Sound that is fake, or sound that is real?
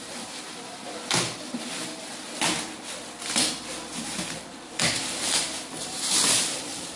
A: fake